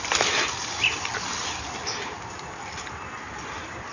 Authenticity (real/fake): real